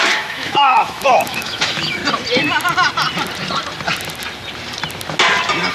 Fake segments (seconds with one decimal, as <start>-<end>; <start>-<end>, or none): 0.0-2.0